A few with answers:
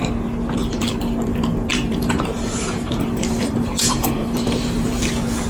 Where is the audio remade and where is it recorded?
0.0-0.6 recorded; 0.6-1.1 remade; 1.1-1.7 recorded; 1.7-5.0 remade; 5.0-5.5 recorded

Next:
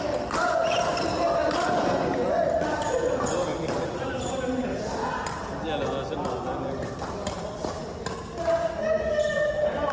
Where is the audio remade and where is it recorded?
0.0-3.5 recorded; 3.5-4.4 remade; 4.4-9.9 recorded

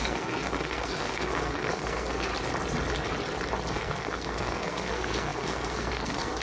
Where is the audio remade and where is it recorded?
0.0-2.3 remade; 2.3-3.7 recorded; 3.7-6.4 remade